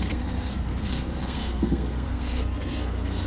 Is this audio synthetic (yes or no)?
yes